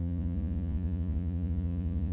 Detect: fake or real fake